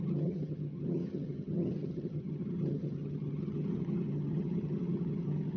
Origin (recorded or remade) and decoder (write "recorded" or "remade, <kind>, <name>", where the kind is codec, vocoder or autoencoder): remade, vocoder, HiFi-GAN